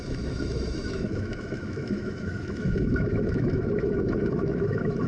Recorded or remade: remade